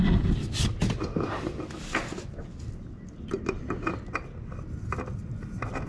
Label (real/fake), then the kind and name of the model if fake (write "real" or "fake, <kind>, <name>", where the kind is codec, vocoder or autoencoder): real